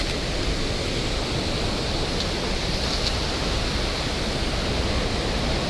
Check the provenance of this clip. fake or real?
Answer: real